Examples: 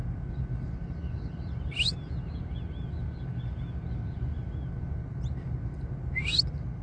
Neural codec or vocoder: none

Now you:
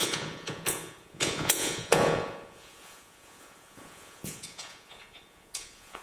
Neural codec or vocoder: vocoder, Vocos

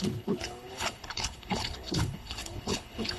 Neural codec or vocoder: codec, HILCodec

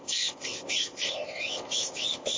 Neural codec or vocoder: codec, ZipCodec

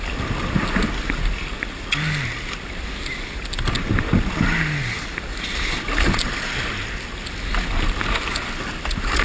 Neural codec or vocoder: none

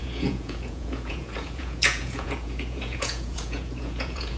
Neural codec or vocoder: vocoder, Vocos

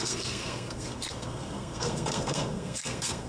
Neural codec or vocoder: codec, SNAC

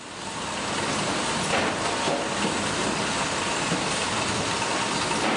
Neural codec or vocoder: none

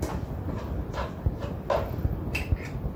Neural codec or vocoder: none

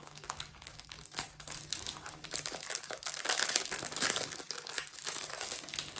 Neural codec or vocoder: codec, DAC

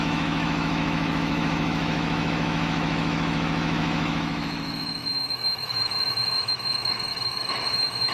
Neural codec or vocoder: autoencoder, DAC-VAE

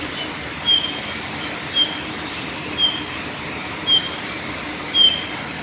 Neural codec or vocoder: none